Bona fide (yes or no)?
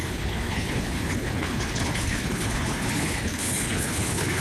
no